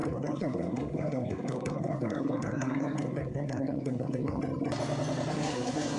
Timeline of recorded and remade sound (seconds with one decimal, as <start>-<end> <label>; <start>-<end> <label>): 0.0-4.4 remade; 4.4-5.3 recorded; 5.3-6.0 remade